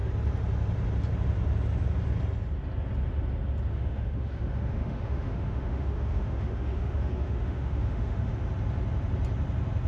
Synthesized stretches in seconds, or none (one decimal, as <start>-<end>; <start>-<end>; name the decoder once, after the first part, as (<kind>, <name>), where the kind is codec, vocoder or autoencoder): 3.7-8.3 (autoencoder, DAC-VAE)